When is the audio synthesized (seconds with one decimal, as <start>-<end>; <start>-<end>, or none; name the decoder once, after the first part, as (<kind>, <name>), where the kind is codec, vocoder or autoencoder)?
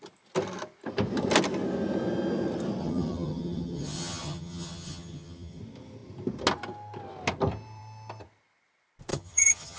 2.8-5.6 (vocoder, HiFi-GAN); 9.1-9.8